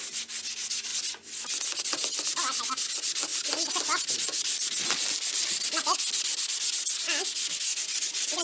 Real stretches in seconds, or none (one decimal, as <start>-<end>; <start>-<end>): 0.0-7.7

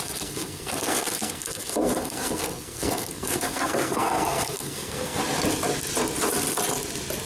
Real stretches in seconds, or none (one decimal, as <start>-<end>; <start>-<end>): 5.2-7.3

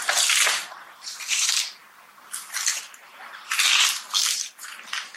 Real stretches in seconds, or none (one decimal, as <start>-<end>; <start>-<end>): 0.0-1.8; 3.1-5.2